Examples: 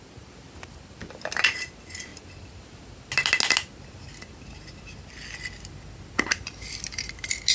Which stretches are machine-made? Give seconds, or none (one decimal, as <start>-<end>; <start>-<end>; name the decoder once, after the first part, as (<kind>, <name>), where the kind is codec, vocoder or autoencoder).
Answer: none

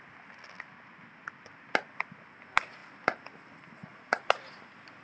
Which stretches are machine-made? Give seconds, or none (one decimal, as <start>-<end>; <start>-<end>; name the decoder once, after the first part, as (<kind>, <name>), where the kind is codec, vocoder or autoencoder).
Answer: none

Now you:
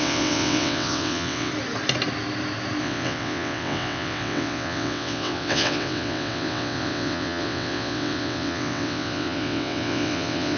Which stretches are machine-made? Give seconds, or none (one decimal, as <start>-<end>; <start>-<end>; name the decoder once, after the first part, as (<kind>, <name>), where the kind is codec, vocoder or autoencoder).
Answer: 0.0-1.5 (vocoder, WaveNeXt); 2.8-10.6

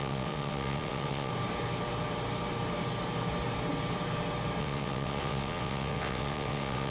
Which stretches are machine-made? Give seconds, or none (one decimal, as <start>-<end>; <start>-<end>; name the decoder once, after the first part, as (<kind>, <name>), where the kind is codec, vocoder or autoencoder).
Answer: 0.0-1.3 (vocoder, WaveNeXt); 4.6-6.9

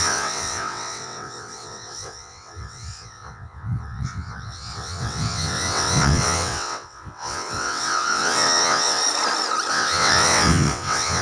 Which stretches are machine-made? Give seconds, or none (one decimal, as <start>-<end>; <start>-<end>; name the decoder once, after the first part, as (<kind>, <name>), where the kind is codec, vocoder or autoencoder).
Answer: 0.0-9.0 (vocoder, WaveNeXt); 9.7-11.2

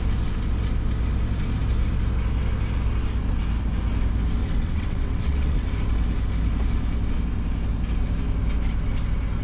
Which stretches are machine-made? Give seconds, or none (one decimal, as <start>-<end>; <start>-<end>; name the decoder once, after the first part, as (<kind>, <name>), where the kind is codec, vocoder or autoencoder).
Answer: 4.4-5.7 (vocoder, WaveNeXt)